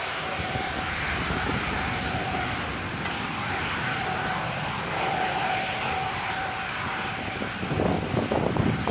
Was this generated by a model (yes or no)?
no